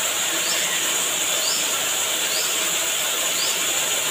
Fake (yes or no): yes